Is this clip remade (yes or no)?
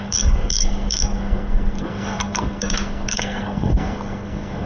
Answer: yes